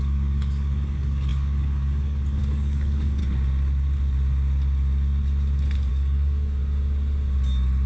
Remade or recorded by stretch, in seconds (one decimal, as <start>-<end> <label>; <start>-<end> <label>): 0.0-3.2 remade; 3.2-5.9 recorded; 5.9-6.6 remade; 6.6-7.9 recorded